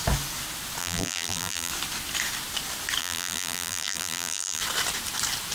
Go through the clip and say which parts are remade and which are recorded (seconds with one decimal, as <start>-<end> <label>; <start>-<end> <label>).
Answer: 0.0-0.8 recorded; 0.8-1.7 remade; 1.7-3.0 recorded; 3.0-4.6 remade; 4.6-5.5 recorded